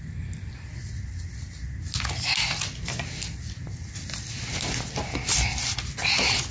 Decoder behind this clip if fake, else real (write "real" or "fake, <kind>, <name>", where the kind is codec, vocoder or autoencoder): real